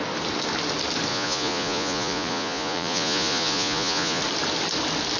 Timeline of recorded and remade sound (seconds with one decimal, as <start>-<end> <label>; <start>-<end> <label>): 0.0-1.1 recorded; 1.1-4.2 remade; 4.2-5.2 recorded